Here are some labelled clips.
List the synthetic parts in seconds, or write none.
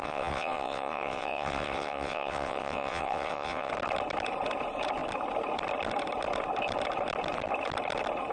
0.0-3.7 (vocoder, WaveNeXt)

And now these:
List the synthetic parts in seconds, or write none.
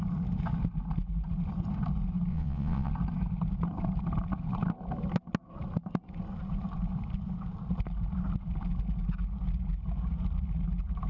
2.3-2.9 (vocoder, WaveNeXt)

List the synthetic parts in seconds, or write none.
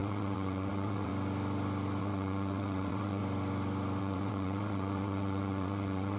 0.0-1.1 (vocoder, WaveNeXt); 2.0-3.2; 4.0-6.2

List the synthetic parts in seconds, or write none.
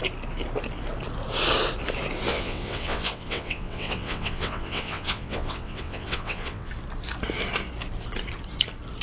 2.3-6.7 (vocoder, WaveNeXt)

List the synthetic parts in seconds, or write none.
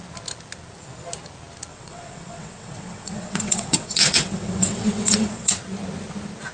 1.7-5.5 (vocoder, WaveNeXt)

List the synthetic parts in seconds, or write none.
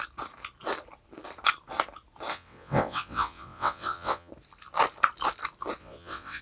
2.3-4.3 (vocoder, WaveNeXt); 5.8-6.4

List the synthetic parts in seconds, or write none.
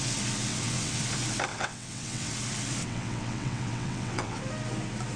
0.5-1.0 (vocoder, WaveNeXt); 1.5-2.3; 2.8-4.4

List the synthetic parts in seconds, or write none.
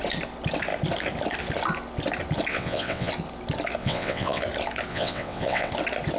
2.5-3.1 (vocoder, WaveNeXt); 3.8-4.4; 4.9-5.7